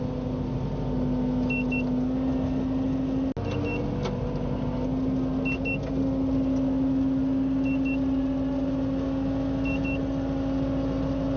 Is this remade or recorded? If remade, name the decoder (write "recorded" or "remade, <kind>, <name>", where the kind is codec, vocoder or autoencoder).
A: recorded